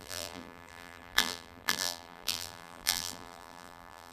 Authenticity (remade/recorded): remade